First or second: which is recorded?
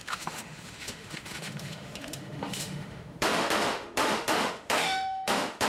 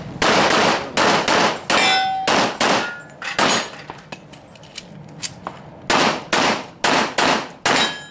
second